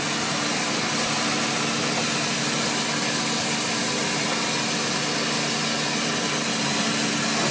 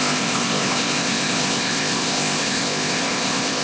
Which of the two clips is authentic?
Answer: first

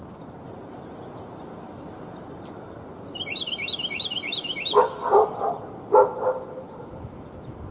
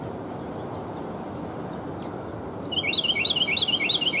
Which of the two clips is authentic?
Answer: second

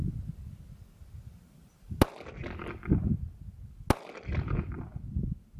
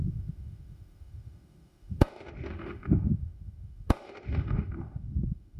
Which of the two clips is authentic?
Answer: first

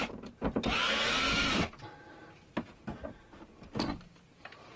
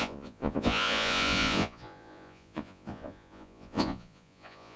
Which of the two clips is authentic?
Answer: first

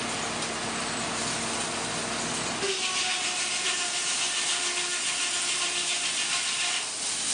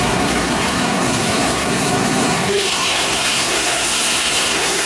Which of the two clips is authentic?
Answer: first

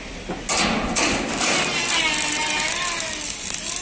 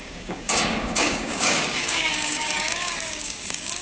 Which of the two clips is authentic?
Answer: first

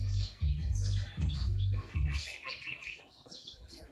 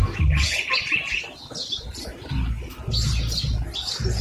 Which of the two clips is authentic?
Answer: second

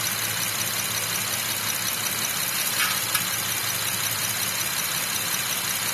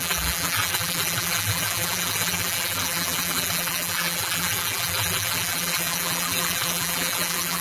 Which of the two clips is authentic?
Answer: first